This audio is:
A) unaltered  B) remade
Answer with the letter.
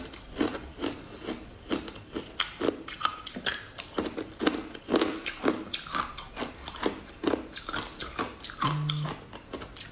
A